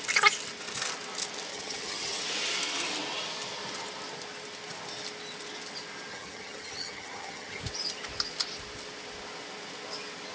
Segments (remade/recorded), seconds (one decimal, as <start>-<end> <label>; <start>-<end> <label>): 0.0-1.5 recorded; 1.5-2.2 remade; 2.2-6.1 recorded; 6.1-7.6 remade; 7.6-10.3 recorded